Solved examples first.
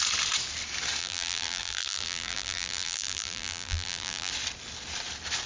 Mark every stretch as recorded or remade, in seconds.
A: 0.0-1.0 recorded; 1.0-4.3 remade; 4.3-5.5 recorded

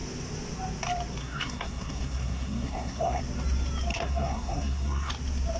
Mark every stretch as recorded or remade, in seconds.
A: 0.0-1.2 recorded; 1.2-3.2 remade; 3.2-3.9 recorded; 3.9-5.1 remade; 5.1-5.6 recorded

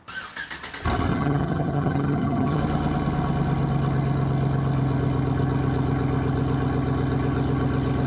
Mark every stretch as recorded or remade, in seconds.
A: 0.0-1.1 recorded; 1.1-2.6 remade; 2.6-8.1 recorded

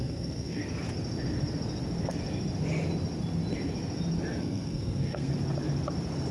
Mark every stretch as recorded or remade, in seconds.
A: 0.0-0.6 remade; 0.6-4.4 recorded; 4.4-5.3 remade; 5.3-6.3 recorded

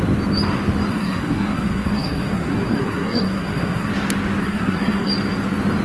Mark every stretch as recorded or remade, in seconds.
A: 0.0-0.9 recorded; 0.9-3.9 remade; 3.9-4.4 recorded; 4.4-5.1 remade; 5.1-5.8 recorded

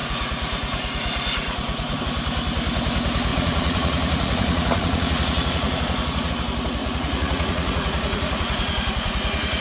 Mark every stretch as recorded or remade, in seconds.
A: 0.0-2.0 remade; 2.0-3.3 recorded; 3.3-6.3 remade; 6.3-6.8 recorded; 6.8-9.6 remade